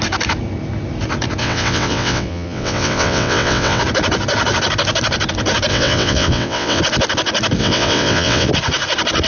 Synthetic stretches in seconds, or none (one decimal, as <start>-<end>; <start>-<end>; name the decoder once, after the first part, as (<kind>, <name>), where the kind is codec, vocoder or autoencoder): 1.4-3.8 (vocoder, WaveNeXt); 5.7-6.8; 7.6-8.5